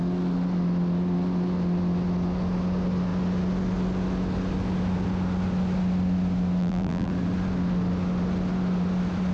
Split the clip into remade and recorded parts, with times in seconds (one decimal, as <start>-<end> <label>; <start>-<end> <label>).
0.0-6.6 recorded; 6.6-7.1 remade; 7.1-9.3 recorded